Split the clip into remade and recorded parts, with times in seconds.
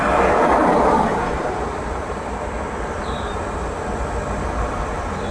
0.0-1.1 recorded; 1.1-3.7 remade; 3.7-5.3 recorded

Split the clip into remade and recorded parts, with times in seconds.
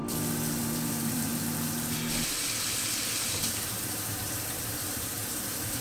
0.0-0.6 recorded; 0.6-1.3 remade; 1.3-3.3 recorded; 3.3-5.8 remade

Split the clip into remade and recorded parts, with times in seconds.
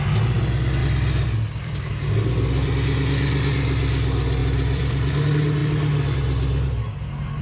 0.0-0.8 recorded; 0.8-2.7 remade; 2.7-4.4 recorded; 4.4-5.1 remade; 5.1-7.4 recorded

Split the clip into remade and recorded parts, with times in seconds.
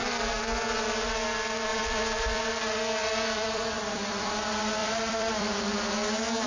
0.0-1.7 recorded; 1.7-2.4 remade; 2.4-3.0 recorded; 3.0-4.3 remade; 4.3-4.8 recorded; 4.8-5.9 remade; 5.9-6.5 recorded